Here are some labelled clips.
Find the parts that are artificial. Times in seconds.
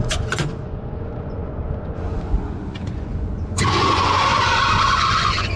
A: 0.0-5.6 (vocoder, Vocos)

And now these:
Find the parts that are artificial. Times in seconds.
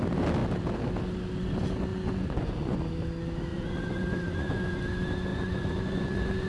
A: 1.9-2.8 (vocoder, Vocos); 3.5-4.8; 5.3-6.5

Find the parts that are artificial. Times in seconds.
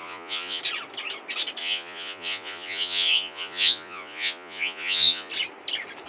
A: 0.0-0.6 (vocoder, Vocos); 1.6-5.3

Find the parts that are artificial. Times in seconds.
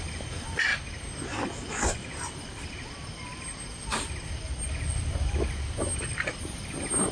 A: none